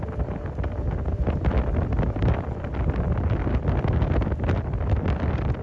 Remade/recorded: recorded